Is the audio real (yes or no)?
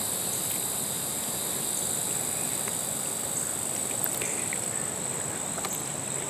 yes